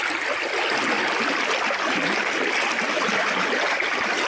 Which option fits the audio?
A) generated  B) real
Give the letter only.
B